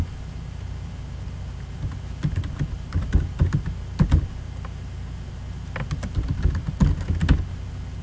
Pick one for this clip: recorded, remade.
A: recorded